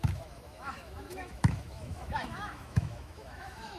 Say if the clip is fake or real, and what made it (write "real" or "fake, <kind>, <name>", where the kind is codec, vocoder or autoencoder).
fake, autoencoder, DAC-VAE